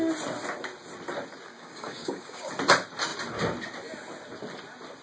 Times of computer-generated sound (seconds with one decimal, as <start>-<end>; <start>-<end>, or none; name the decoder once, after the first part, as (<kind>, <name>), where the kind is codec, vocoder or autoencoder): 1.5-2.5 (codec, DAC)